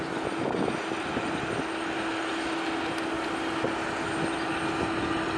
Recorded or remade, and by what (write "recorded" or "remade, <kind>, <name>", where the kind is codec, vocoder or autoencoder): recorded